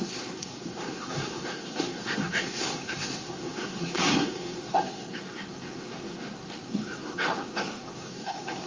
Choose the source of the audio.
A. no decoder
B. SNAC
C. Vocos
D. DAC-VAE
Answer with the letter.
B